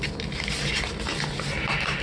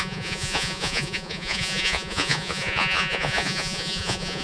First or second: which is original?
first